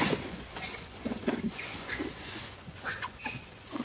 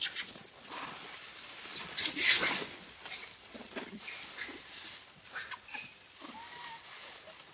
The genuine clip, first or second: second